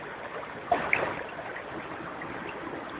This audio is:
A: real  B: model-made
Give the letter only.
A